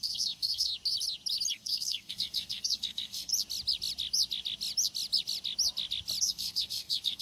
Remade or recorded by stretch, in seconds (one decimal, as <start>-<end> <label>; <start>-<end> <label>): 0.0-0.7 remade; 0.7-1.5 recorded; 1.5-3.3 remade; 3.3-6.2 recorded; 6.2-7.2 remade